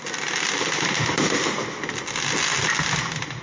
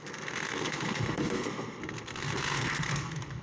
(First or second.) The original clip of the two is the first